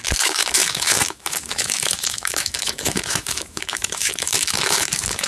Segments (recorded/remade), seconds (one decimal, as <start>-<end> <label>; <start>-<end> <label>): 0.0-5.3 remade